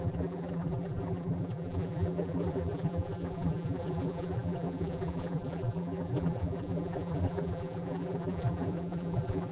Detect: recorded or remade remade